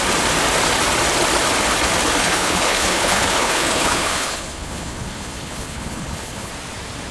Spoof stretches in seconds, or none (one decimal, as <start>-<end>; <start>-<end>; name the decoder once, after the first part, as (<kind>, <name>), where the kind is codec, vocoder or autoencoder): 2.2-6.5 (codec, HILCodec)